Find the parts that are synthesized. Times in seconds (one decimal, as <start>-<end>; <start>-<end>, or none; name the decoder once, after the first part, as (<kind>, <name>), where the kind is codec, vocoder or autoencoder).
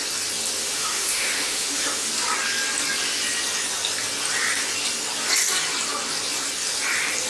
0.6-2.1 (autoencoder, DAC-VAE)